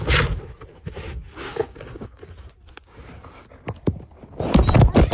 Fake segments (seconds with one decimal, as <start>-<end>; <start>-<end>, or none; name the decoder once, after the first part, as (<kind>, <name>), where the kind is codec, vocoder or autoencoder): 1.5-2.3 (codec, DAC)

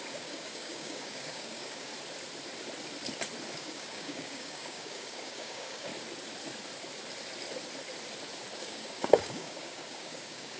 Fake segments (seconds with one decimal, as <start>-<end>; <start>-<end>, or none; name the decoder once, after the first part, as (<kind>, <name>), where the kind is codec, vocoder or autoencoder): 0.0-1.9 (codec, DAC); 3.6-5.9; 8.6-10.6